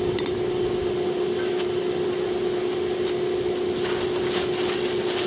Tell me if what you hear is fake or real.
real